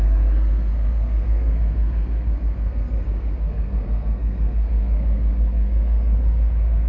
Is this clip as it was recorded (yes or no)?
no